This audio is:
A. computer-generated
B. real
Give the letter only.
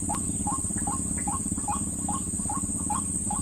B